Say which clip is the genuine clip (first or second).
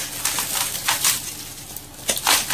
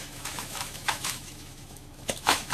first